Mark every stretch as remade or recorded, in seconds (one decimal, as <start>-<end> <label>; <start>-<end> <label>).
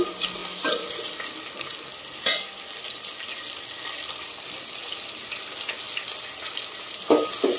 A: 0.0-0.4 recorded; 0.4-0.9 remade; 0.9-7.6 recorded